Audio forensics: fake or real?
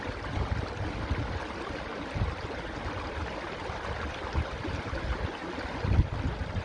real